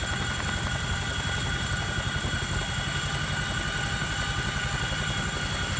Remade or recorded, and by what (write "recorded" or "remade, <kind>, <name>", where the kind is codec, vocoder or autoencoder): recorded